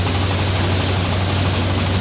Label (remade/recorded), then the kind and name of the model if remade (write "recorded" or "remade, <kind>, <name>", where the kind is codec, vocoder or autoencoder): recorded